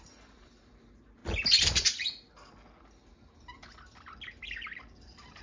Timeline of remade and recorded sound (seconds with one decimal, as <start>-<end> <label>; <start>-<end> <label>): 0.0-1.2 remade; 1.2-4.4 recorded; 4.4-5.4 remade